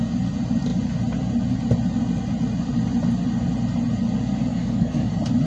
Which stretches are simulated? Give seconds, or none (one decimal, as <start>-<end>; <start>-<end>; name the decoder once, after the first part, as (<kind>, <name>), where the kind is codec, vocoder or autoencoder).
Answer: 4.5-5.1 (codec, DAC)